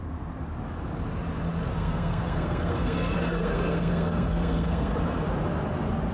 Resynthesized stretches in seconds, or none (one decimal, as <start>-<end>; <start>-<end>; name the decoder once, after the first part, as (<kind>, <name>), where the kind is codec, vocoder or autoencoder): 1.7-4.9 (codec, SNAC)